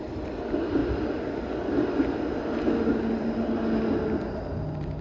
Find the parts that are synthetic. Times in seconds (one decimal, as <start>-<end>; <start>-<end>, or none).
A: none